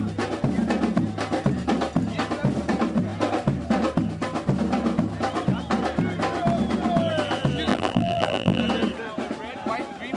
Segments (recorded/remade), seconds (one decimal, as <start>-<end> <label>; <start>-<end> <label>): 0.0-7.7 recorded; 7.7-8.6 remade; 8.6-10.2 recorded